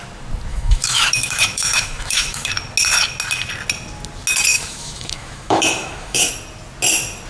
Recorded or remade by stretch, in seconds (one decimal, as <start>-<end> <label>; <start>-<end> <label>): 0.0-0.5 recorded; 0.5-2.5 remade; 2.5-4.5 recorded; 4.5-6.3 remade; 6.3-7.3 recorded